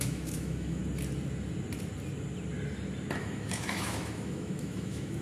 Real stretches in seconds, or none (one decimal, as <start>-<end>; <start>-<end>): 0.8-3.2